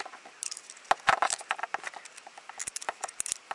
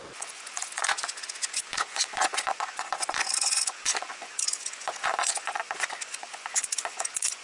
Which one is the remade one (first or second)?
second